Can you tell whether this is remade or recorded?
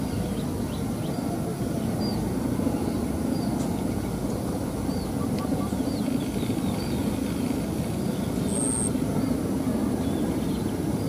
recorded